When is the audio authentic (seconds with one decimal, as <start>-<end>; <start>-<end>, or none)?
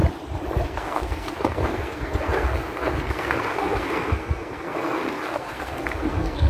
0.0-0.6